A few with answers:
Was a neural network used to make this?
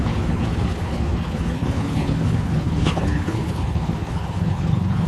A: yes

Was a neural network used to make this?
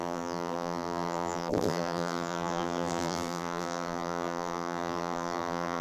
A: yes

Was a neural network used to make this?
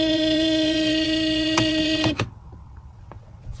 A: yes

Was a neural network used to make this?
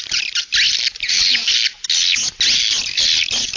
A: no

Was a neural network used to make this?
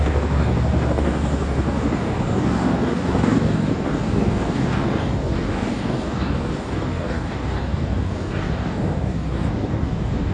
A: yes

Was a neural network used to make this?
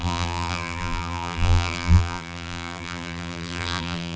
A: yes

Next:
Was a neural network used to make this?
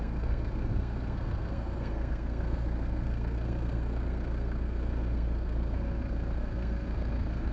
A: yes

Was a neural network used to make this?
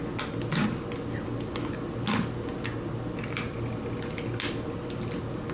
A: no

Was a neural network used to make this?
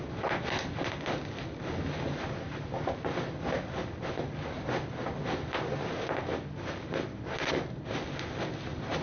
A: no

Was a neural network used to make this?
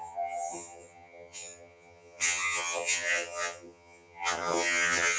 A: yes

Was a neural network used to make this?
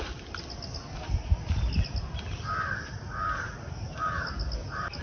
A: no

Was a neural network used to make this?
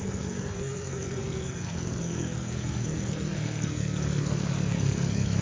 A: yes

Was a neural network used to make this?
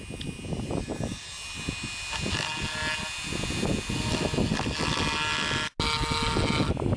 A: no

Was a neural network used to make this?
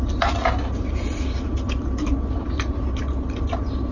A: no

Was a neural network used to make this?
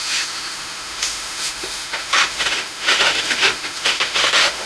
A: yes